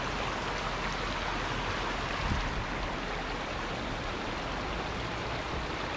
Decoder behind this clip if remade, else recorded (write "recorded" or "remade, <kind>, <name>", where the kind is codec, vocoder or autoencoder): recorded